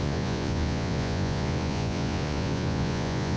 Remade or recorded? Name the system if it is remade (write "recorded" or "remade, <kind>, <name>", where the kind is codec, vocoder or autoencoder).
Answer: remade, vocoder, Vocos